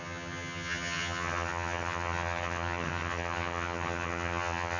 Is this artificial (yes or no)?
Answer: yes